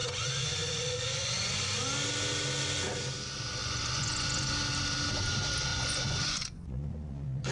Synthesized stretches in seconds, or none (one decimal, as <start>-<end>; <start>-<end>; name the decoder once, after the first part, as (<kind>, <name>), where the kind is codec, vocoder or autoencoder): 0.0-1.7 (vocoder, Vocos); 3.6-4.5; 5.7-7.5